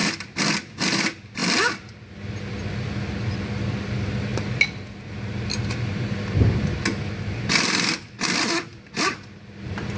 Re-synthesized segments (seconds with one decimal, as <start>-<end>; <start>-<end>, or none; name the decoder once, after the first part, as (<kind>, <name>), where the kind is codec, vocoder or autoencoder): none